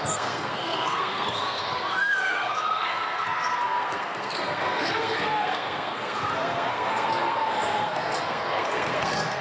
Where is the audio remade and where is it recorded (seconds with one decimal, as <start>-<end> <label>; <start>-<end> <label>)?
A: 0.0-9.4 remade